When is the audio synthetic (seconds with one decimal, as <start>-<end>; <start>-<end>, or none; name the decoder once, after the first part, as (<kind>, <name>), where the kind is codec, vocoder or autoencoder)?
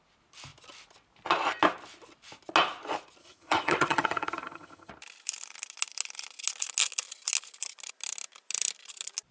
3.2-4.9 (vocoder, HiFi-GAN)